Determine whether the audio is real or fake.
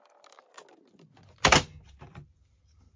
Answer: real